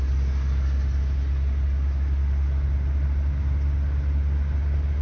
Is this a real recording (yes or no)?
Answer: yes